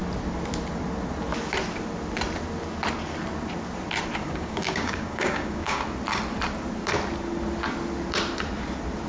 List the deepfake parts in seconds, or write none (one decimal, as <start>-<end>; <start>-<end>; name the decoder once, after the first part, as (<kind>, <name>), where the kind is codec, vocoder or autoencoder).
4.2-5.8 (codec, DAC)